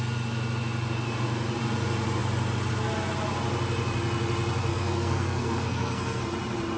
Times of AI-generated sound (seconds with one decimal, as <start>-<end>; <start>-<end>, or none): 4.7-6.2